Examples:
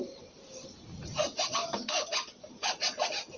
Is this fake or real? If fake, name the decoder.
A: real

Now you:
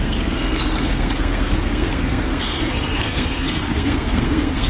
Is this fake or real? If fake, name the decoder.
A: fake, codec, SNAC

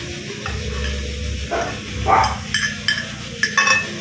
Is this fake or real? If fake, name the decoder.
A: real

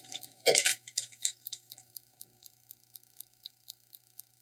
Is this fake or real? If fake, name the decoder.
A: fake, codec, SNAC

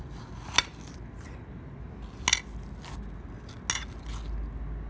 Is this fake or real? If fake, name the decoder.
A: real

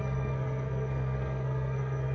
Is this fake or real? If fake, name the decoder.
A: fake, codec, SNAC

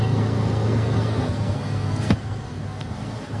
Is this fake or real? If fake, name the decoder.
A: fake, codec, SNAC